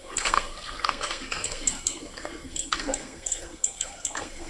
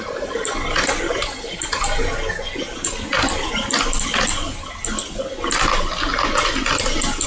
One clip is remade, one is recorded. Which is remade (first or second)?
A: first